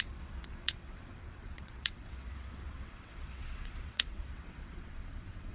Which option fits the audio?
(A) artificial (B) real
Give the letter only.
A